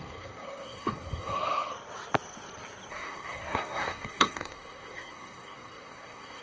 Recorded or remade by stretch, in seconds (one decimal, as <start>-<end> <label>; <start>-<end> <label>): 0.0-1.7 remade; 1.7-2.9 recorded; 2.9-6.4 remade